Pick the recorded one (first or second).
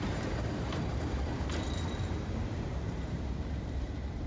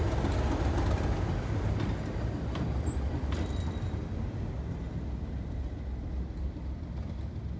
second